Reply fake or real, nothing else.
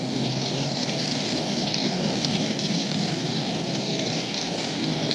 fake